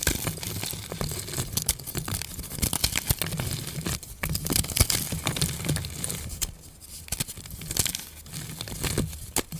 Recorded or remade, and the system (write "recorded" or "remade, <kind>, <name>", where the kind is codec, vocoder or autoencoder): recorded